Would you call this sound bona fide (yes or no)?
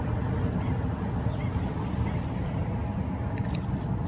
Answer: yes